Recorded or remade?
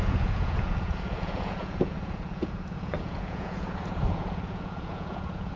remade